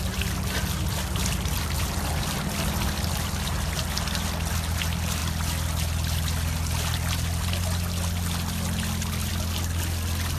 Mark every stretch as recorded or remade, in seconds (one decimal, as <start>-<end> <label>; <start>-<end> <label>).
0.0-10.4 recorded